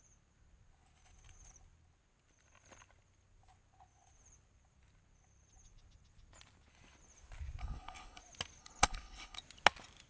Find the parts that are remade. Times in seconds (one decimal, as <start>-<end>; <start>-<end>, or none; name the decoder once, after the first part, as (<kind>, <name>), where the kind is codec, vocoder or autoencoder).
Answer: 7.6-8.2 (codec, HILCodec); 8.6-9.4